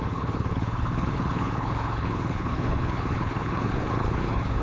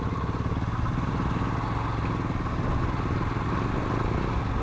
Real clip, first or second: second